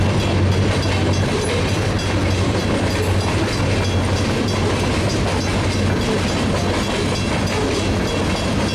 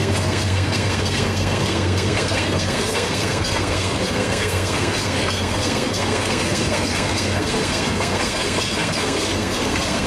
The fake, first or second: second